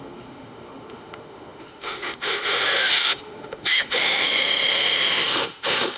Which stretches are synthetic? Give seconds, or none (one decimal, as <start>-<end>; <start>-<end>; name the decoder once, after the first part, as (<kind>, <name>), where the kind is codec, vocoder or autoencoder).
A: 0.0-6.0 (autoencoder, DAC-VAE)